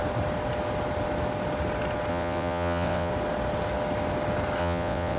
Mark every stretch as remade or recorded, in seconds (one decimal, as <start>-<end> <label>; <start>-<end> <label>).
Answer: 0.0-2.1 recorded; 2.1-3.1 remade; 3.1-4.6 recorded; 4.6-5.2 remade